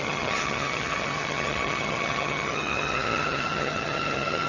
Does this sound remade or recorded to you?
remade